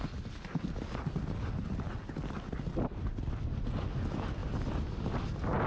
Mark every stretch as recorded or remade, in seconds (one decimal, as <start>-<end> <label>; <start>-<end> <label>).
0.0-5.7 recorded